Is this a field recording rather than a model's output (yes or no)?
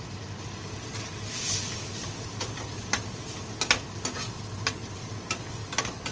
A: yes